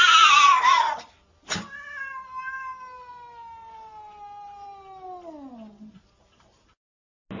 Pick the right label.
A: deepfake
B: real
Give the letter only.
B